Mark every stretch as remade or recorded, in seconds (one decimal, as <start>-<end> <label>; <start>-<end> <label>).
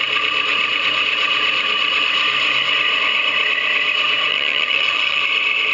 0.0-4.3 recorded; 4.3-5.2 remade; 5.2-5.7 recorded